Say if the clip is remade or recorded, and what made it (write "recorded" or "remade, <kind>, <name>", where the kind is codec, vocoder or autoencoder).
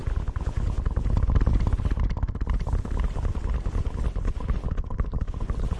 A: recorded